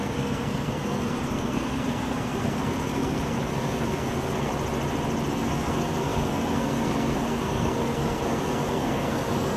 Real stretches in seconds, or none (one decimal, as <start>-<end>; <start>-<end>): 4.5-5.3